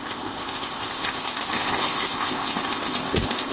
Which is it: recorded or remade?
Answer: remade